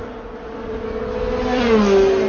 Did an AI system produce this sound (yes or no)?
no